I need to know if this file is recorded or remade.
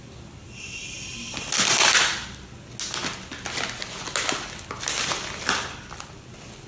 recorded